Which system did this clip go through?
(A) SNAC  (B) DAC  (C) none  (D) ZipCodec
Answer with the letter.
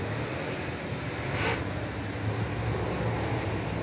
C